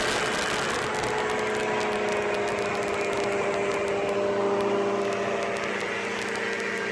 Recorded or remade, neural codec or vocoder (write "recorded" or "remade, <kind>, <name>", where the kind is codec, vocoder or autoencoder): recorded